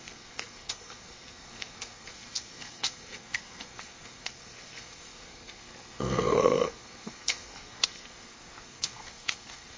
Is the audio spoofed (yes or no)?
yes